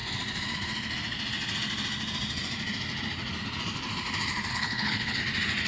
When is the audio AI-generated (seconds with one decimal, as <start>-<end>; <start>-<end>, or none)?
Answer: 4.5-5.2